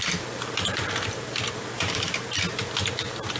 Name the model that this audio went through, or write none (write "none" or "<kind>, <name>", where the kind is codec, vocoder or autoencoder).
none